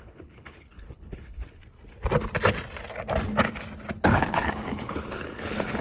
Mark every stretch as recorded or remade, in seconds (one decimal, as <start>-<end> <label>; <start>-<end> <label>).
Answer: 0.0-1.6 remade; 1.6-4.0 recorded; 4.0-5.8 remade